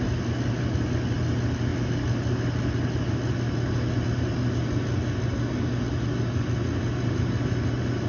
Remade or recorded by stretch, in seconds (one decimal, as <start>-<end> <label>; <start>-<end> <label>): 0.0-8.1 recorded